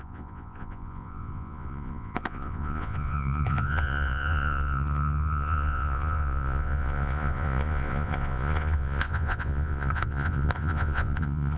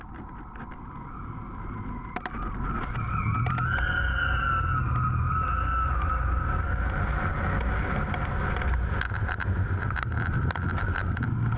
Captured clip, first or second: second